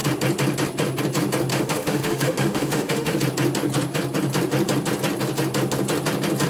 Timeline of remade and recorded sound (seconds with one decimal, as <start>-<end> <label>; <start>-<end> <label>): 0.0-1.5 recorded; 1.5-3.2 remade; 3.2-6.5 recorded